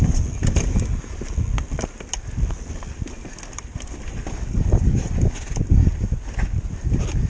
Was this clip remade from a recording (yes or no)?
no